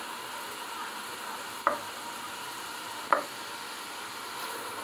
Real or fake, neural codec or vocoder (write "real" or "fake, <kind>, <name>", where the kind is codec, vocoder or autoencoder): real